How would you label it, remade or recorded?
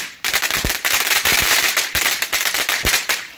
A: remade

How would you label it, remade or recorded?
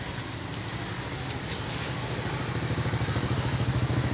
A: recorded